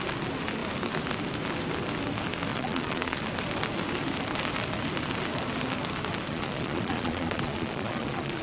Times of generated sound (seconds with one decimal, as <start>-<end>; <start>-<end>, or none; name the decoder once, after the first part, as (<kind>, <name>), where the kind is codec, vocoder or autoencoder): 2.5-3.2 (vocoder, Vocos); 6.3-8.4